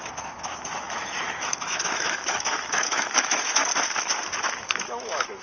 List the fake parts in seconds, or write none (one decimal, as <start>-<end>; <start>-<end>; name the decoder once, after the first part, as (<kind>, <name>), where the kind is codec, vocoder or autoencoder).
0.0-3.7 (autoencoder, DAC-VAE); 4.4-5.4